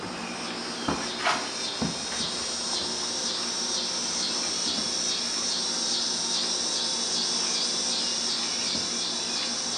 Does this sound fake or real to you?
real